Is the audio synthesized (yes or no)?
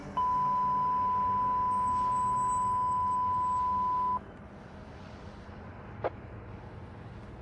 no